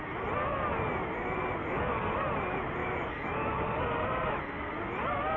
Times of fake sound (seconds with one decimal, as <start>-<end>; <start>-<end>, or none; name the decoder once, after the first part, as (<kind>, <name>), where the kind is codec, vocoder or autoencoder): 1.6-2.1 (codec, DAC); 2.8-3.9